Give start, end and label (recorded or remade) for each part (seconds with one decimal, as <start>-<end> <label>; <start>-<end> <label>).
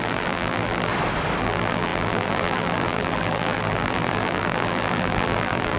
0.0-0.9 remade; 0.9-1.4 recorded; 1.4-5.8 remade